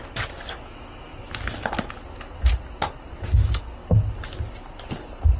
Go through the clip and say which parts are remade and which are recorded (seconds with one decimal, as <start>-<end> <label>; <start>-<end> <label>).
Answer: 0.0-5.4 recorded